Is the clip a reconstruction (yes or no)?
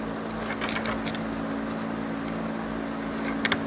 no